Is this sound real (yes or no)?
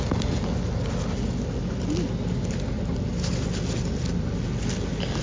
yes